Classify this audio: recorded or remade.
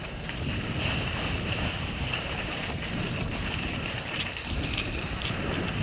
remade